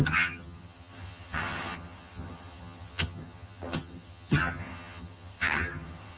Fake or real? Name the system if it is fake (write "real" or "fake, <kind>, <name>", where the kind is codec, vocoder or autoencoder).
fake, vocoder, HiFi-GAN